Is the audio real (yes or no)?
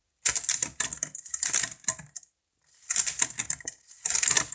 yes